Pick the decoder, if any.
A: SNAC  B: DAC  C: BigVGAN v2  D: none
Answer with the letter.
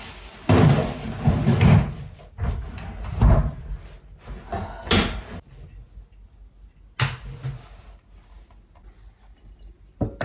D